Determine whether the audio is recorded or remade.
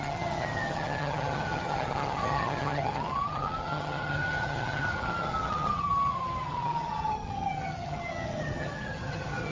remade